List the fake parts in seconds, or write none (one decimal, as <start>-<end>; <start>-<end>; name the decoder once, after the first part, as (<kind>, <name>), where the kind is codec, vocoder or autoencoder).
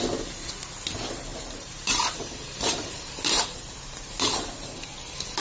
1.3-4.5 (vocoder, BigVGAN v2)